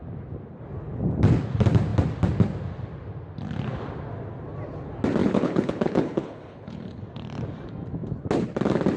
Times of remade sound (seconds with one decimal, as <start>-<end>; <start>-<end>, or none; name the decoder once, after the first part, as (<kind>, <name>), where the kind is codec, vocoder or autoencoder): 5.2-7.0 (codec, HILCodec)